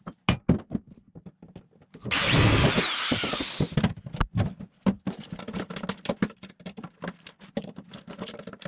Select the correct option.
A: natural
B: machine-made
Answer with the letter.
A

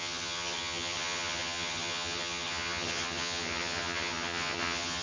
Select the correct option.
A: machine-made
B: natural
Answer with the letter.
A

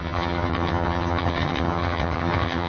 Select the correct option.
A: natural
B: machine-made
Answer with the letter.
B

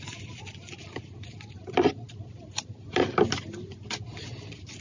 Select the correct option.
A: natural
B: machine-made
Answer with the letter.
A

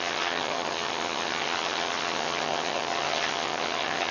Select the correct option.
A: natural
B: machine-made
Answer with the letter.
B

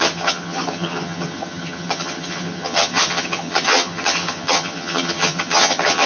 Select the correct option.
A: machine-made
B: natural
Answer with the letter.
A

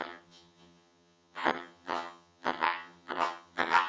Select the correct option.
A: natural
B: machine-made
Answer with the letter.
B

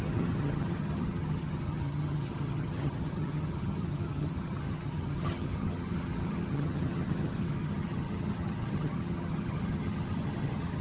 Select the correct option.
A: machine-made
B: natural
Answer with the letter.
A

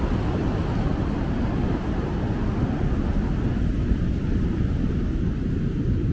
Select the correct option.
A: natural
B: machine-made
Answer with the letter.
A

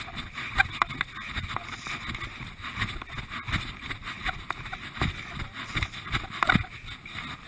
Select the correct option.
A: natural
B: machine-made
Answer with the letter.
A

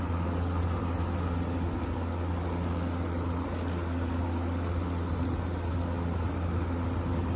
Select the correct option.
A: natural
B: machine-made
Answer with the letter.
A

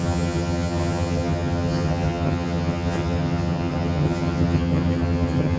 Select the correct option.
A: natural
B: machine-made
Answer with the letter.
B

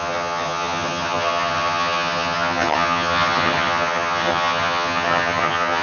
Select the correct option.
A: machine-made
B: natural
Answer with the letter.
A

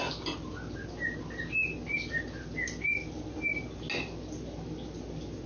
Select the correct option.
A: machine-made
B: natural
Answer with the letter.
B